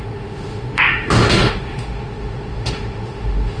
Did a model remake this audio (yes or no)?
yes